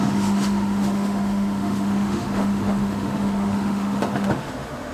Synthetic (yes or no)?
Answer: yes